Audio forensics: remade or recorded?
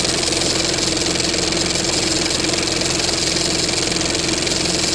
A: recorded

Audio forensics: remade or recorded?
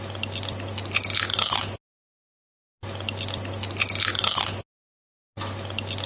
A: recorded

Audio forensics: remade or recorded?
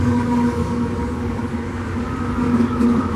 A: remade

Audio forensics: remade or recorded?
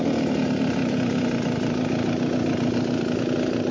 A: recorded